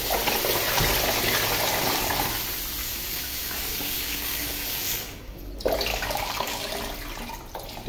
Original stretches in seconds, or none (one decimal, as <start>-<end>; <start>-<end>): 0.0-2.8; 5.5-5.9; 6.7-7.9